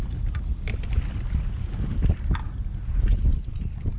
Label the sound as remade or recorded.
recorded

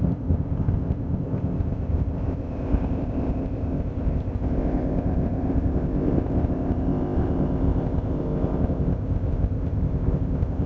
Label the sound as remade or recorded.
remade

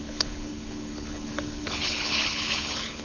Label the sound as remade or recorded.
remade